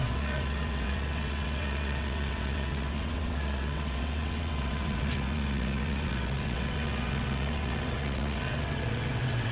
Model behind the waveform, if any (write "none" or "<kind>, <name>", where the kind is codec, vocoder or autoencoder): vocoder, WaveNeXt